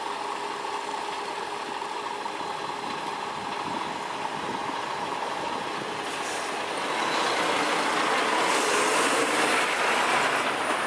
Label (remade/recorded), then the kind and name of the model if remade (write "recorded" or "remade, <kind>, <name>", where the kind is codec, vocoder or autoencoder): recorded